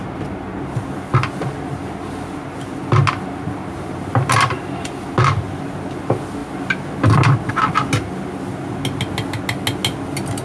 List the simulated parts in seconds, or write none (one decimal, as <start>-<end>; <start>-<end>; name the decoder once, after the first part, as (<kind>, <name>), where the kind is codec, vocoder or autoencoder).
none